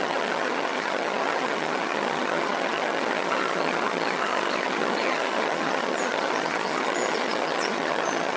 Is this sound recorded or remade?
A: remade